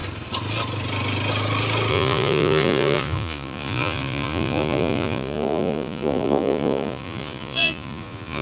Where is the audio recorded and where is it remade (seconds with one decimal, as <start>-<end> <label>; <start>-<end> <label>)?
0.0-1.9 recorded; 1.9-8.4 remade